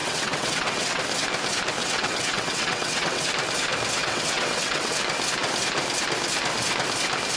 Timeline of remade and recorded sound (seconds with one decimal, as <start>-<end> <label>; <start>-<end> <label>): 0.0-1.0 remade; 1.0-1.8 recorded; 1.8-3.2 remade; 3.2-4.0 recorded; 4.0-5.0 remade; 5.0-7.4 recorded